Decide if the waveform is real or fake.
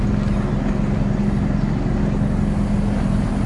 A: real